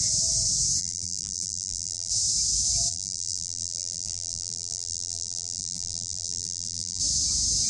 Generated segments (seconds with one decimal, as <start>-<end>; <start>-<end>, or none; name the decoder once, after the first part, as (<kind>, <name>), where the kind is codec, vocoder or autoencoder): 0.8-2.1 (vocoder, BigVGAN v2); 2.9-7.0